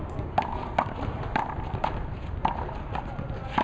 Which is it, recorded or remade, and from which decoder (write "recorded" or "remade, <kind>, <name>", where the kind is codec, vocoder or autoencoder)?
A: recorded